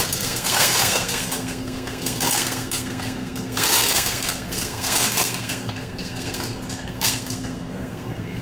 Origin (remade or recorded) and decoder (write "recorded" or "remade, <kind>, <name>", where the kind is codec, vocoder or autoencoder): remade, codec, SNAC